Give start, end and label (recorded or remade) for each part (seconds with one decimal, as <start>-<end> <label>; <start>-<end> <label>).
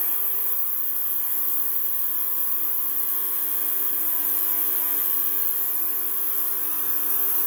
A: 0.0-3.1 remade; 3.1-3.7 recorded; 3.7-4.2 remade; 4.2-5.7 recorded; 5.7-7.5 remade